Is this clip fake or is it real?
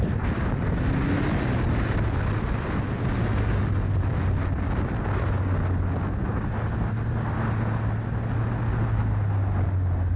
real